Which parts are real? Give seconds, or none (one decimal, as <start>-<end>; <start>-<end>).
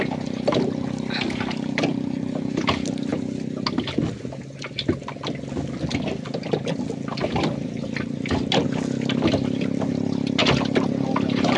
0.0-11.6